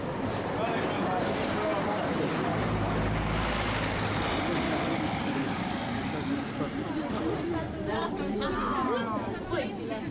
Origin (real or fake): real